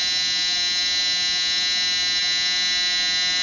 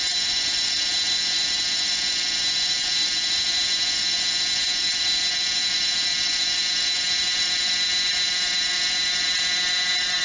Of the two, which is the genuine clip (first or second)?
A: first